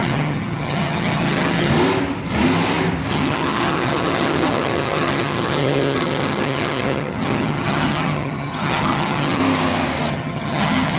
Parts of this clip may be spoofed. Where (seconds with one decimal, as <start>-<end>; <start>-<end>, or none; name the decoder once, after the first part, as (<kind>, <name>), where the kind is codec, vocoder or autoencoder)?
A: 0.0-1.7 (vocoder, HiFi-GAN); 3.1-9.4; 10.1-11.0